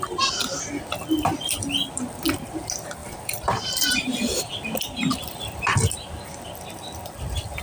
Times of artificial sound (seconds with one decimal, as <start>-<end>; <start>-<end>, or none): 3.0-4.5